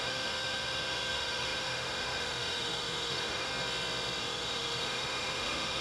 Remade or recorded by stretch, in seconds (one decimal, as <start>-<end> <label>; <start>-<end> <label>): 0.0-3.5 remade; 3.5-4.2 recorded; 4.2-5.8 remade